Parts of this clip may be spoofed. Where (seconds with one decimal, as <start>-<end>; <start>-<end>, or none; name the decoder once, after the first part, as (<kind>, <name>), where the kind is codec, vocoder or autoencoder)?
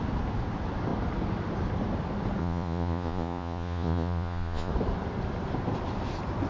2.4-4.7 (vocoder, Vocos)